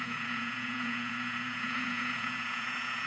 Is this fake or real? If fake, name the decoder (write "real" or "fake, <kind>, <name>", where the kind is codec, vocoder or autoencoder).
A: fake, vocoder, Vocos